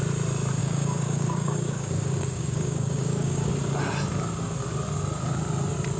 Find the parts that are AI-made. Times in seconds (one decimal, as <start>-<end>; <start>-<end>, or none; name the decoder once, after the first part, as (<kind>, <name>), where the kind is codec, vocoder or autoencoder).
0.6-3.5 (codec, DAC)